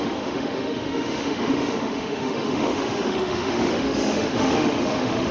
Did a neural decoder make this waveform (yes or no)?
yes